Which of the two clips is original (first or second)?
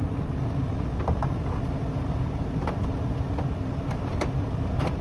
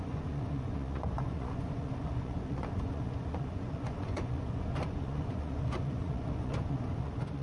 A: first